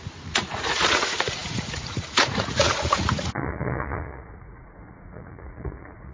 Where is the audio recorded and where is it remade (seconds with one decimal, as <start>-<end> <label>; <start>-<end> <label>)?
0.0-6.1 remade